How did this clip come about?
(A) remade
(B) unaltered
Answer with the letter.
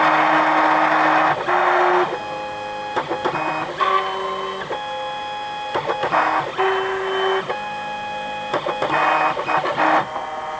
B